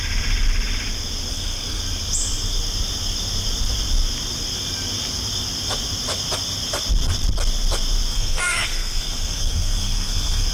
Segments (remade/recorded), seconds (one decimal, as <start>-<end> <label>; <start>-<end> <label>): 0.0-1.3 recorded; 1.3-1.8 remade; 1.8-8.1 recorded; 8.1-10.5 remade